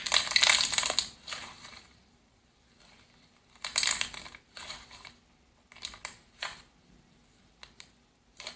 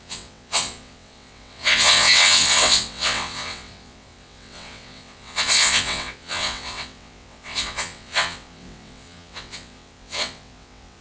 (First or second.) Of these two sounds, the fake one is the second